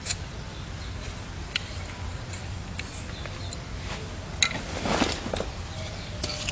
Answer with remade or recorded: recorded